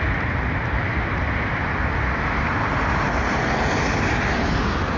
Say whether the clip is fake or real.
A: real